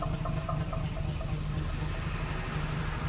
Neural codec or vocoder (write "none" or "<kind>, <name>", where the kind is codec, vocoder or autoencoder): none